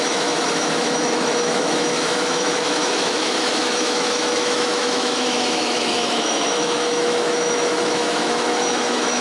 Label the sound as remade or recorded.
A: remade